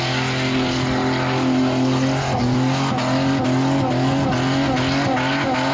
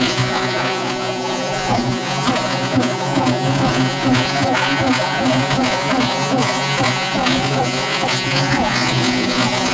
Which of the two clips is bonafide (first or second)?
first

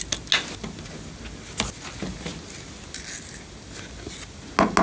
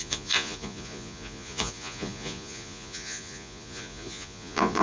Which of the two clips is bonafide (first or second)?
first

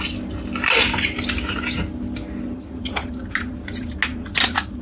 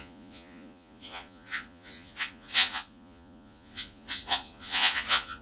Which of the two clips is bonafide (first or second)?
first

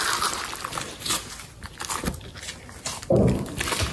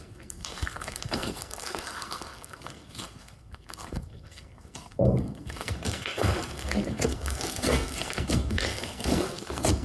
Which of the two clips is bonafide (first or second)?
first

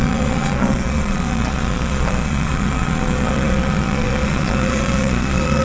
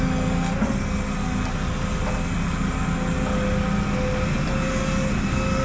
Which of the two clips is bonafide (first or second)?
second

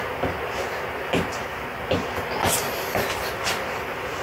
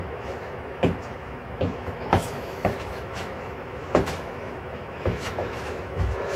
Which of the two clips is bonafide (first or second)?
first